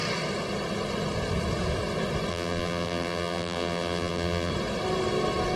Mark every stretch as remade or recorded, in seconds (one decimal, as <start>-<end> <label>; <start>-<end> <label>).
0.0-2.3 recorded; 2.3-4.5 remade; 4.5-5.6 recorded